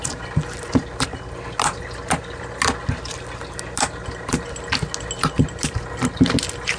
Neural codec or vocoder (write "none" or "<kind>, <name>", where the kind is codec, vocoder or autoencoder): none